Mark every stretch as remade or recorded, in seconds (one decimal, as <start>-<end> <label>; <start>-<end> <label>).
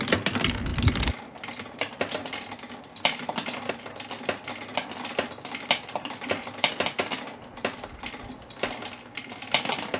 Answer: 0.0-10.0 recorded